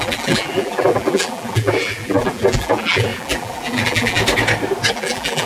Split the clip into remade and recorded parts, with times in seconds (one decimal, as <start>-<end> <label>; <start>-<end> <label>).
0.0-4.2 remade; 4.2-4.9 recorded; 4.9-5.5 remade

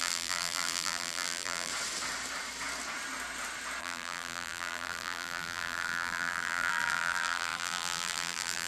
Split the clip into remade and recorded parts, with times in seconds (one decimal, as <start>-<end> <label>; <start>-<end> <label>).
0.0-1.7 remade; 1.7-3.8 recorded; 3.8-8.7 remade

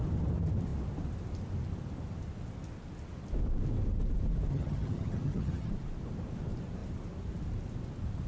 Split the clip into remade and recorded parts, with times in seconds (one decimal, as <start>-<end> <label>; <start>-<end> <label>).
0.0-4.5 recorded; 4.5-5.7 remade; 5.7-8.3 recorded

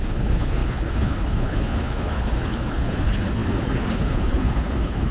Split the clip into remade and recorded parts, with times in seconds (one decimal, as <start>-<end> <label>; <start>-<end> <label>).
0.0-5.1 remade